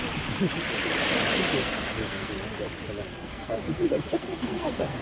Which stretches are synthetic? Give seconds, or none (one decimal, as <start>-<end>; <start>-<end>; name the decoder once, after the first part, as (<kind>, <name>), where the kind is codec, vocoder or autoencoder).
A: 1.6-2.3 (codec, SNAC); 3.1-5.0